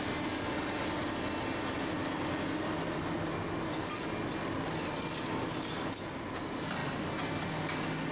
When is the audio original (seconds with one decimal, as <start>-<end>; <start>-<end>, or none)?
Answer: 0.0-8.1